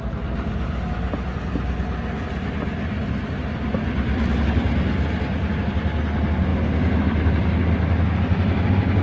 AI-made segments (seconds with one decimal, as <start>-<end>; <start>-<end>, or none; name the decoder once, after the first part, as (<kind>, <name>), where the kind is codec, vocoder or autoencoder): none